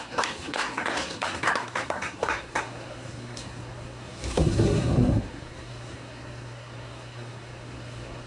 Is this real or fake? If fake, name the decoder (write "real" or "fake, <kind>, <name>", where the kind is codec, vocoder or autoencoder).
fake, codec, SNAC